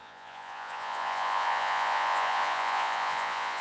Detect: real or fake fake